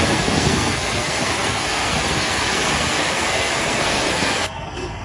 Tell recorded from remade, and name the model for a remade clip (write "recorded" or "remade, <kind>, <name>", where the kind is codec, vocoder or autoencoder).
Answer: remade, codec, SNAC